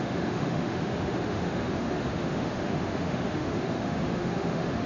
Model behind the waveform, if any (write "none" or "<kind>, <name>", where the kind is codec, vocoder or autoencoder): autoencoder, DAC-VAE